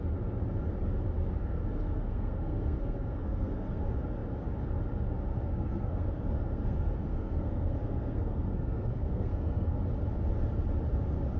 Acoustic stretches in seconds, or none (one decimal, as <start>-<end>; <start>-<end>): 0.0-1.4; 3.8-5.5; 9.8-11.4